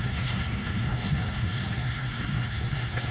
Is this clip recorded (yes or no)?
no